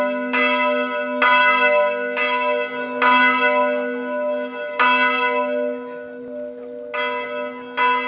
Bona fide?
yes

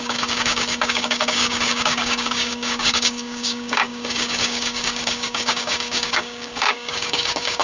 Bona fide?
no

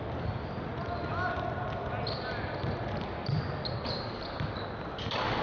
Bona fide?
yes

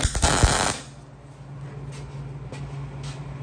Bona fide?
yes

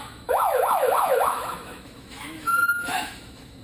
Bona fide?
no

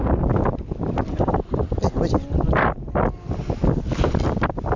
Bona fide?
yes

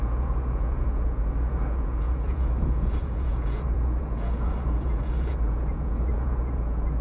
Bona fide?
no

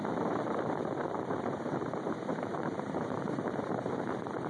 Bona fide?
no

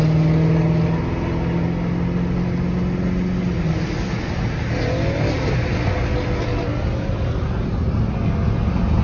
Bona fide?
yes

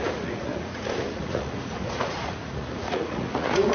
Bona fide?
no